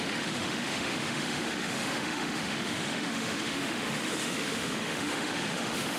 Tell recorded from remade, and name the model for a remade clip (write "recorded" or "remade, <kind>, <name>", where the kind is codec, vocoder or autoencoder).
remade, autoencoder, DAC-VAE